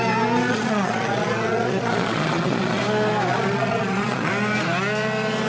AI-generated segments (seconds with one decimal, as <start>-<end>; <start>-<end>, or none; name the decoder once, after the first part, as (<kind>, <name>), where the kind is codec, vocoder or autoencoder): 0.5-2.8 (vocoder, Vocos); 3.3-4.3

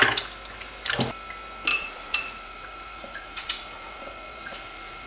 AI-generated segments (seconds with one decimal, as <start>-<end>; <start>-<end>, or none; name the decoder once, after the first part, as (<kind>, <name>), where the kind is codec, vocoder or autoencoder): 1.7-5.1 (vocoder, Vocos)